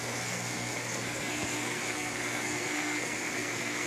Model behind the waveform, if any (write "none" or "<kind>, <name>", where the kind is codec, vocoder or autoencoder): codec, SNAC